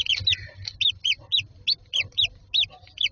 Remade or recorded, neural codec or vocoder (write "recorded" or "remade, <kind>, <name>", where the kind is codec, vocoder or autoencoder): recorded